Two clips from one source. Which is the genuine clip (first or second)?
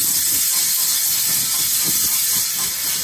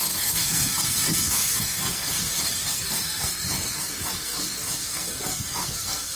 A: first